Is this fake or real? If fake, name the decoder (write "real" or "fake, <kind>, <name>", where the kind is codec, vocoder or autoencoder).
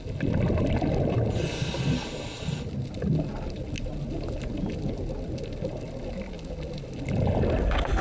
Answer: real